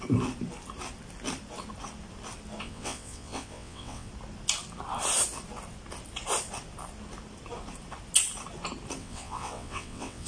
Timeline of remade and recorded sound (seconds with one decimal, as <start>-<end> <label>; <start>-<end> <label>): 0.0-2.6 recorded; 2.6-4.1 remade; 4.1-9.0 recorded; 9.0-10.3 remade